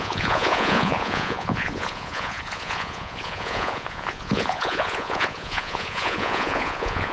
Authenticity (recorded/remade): remade